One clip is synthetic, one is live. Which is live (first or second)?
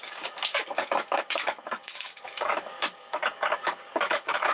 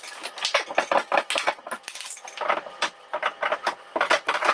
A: second